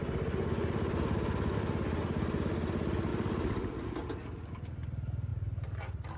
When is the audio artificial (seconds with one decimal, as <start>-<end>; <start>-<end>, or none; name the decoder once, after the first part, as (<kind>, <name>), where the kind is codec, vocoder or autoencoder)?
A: 3.1-3.7 (vocoder, BigVGAN v2); 5.3-6.2